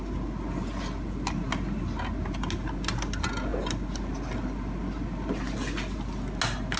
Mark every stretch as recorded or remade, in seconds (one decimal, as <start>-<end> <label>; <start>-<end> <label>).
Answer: 0.0-6.8 recorded